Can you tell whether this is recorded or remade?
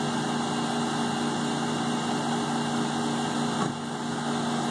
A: recorded